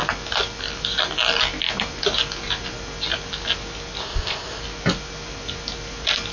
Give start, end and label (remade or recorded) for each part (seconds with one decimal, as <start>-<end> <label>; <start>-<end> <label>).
0.0-4.0 recorded; 4.0-4.6 remade; 4.6-6.3 recorded